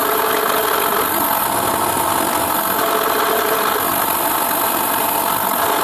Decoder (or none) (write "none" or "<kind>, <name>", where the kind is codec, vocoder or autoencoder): none